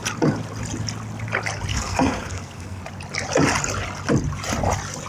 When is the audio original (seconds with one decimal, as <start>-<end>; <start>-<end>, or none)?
0.0-1.7; 2.8-5.1